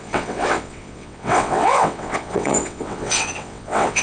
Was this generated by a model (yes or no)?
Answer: yes